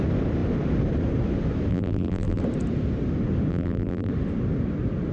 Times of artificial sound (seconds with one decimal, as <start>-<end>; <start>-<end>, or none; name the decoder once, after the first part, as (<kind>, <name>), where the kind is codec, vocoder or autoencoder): 1.7-2.4 (vocoder, BigVGAN v2); 3.5-4.1